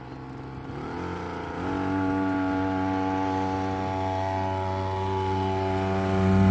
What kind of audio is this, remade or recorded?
recorded